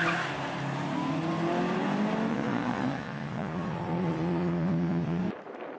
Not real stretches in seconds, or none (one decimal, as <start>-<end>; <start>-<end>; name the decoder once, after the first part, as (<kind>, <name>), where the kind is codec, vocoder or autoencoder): 2.3-5.2 (vocoder, Vocos)